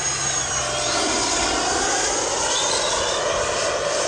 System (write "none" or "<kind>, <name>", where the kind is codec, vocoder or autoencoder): none